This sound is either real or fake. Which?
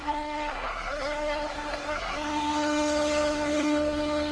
fake